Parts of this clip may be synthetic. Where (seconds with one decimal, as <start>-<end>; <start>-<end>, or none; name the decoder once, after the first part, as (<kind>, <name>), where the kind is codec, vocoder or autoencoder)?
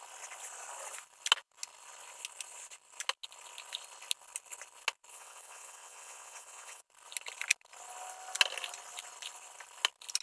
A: 5.1-6.8 (vocoder, WaveNeXt)